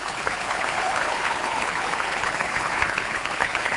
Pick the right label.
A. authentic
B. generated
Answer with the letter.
B